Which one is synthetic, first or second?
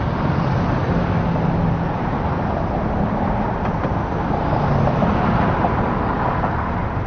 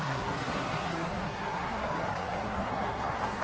second